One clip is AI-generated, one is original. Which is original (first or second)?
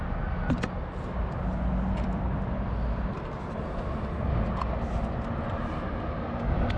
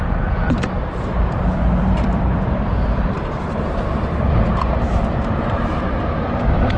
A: first